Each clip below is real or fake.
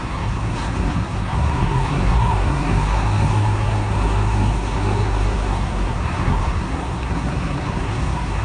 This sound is fake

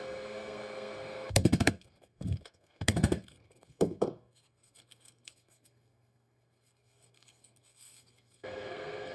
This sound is fake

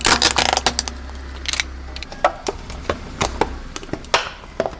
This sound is real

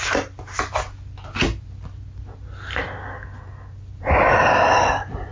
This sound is real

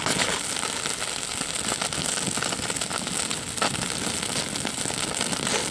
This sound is real